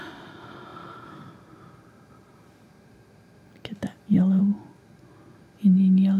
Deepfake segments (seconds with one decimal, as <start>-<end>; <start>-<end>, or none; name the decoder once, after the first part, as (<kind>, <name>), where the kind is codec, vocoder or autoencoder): 0.7-4.4 (vocoder, BigVGAN v2)